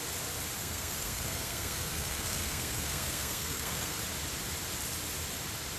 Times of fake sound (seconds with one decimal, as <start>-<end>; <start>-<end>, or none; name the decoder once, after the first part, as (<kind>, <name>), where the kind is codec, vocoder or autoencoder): 0.6-4.0 (codec, SNAC)